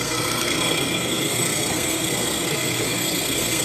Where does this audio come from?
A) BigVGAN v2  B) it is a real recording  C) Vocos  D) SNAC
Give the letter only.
D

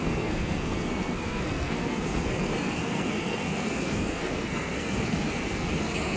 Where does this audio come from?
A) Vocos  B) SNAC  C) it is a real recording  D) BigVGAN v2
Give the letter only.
B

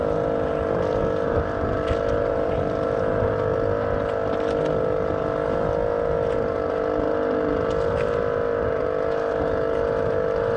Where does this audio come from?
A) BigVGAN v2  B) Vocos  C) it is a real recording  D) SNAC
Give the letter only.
C